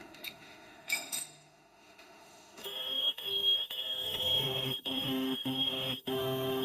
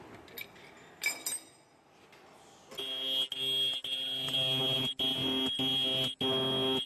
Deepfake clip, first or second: first